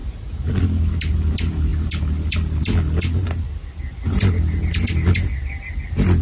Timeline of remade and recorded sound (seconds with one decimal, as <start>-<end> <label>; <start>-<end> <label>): 0.0-6.2 recorded